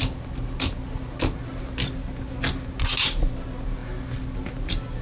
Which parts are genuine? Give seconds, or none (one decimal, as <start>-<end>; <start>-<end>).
0.0-5.0